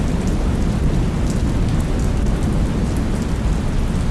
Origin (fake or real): real